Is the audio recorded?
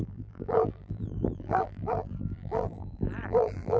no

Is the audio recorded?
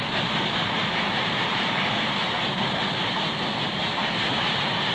no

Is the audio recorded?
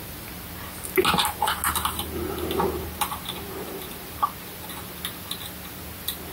yes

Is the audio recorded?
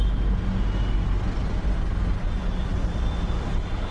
yes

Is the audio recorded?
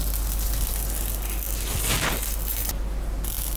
yes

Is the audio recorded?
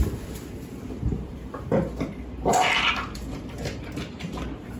no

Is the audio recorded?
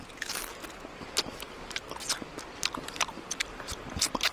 yes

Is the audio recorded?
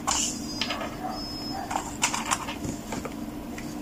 yes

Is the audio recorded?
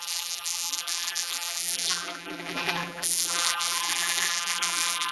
no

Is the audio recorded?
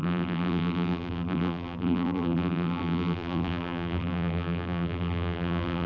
no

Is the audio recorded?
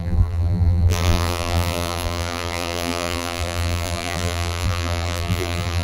no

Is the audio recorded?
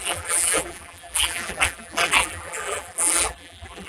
no